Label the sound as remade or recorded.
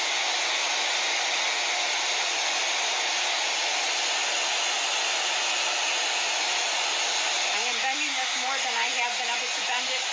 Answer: recorded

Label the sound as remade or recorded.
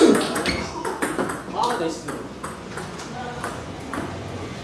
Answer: remade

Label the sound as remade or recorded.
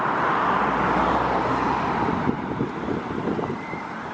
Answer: remade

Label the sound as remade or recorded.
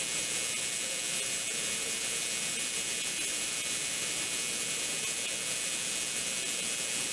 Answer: recorded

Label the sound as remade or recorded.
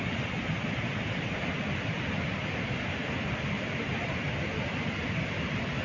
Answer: recorded